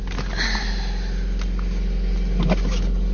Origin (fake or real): real